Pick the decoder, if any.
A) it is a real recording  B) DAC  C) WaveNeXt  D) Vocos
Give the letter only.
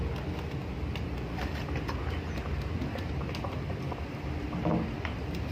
A